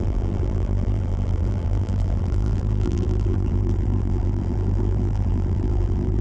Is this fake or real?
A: fake